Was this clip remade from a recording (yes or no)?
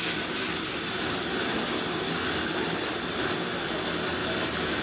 no